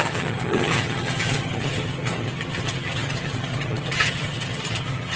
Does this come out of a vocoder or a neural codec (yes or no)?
yes